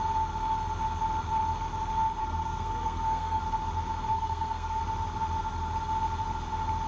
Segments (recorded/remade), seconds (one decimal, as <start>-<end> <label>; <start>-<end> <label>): 0.0-2.2 recorded; 2.2-3.4 remade; 3.4-4.1 recorded; 4.1-4.8 remade; 4.8-6.9 recorded